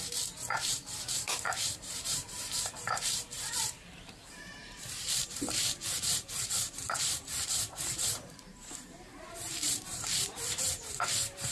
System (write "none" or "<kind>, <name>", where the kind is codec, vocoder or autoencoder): vocoder, BigVGAN v2